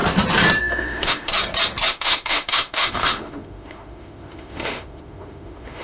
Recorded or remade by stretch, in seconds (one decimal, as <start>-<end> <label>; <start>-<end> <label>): 0.0-0.6 recorded; 0.6-1.3 remade; 1.3-1.9 recorded; 1.9-5.8 remade